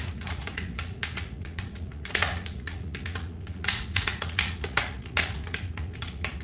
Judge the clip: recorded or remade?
remade